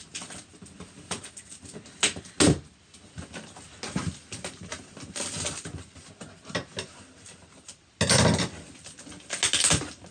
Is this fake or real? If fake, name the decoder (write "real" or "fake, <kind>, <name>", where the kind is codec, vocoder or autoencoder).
real